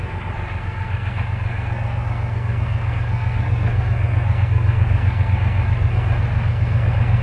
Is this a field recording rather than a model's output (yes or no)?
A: no